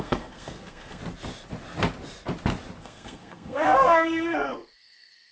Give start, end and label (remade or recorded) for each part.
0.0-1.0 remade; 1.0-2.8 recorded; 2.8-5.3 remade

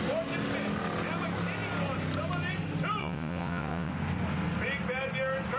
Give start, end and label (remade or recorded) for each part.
0.0-3.0 recorded; 3.0-3.9 remade; 3.9-5.6 recorded

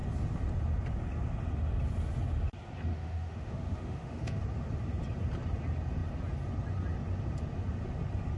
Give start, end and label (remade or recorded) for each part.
0.0-2.9 recorded; 2.9-4.4 remade; 4.4-8.4 recorded

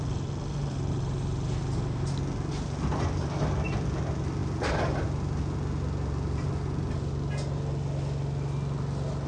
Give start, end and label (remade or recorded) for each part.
0.0-9.3 recorded

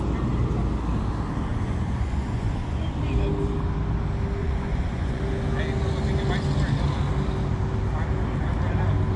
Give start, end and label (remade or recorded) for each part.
0.0-1.5 recorded; 1.5-3.0 remade; 3.0-4.4 recorded; 4.4-5.2 remade; 5.2-9.2 recorded

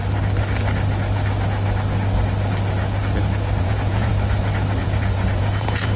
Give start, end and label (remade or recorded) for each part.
0.0-3.6 recorded; 3.6-4.1 remade; 4.1-4.8 recorded; 4.8-6.0 remade

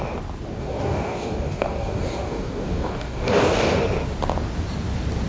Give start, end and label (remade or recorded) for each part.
0.0-0.6 recorded; 0.6-3.8 remade; 3.8-5.3 recorded

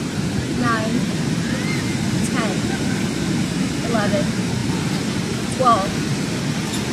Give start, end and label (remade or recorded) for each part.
0.0-4.6 recorded; 4.6-5.6 remade; 5.6-6.9 recorded